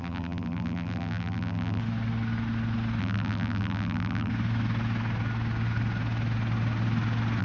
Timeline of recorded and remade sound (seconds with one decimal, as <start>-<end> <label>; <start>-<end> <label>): 0.0-1.8 remade; 1.8-3.0 recorded; 3.0-4.3 remade; 4.3-7.4 recorded